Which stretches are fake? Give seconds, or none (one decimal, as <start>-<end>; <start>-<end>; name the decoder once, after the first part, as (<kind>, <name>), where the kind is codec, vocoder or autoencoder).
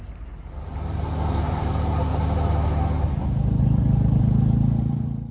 0.0-2.1 (vocoder, BigVGAN v2); 4.2-5.3